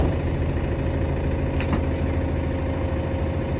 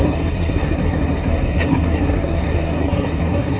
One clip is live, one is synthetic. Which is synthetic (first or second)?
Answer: second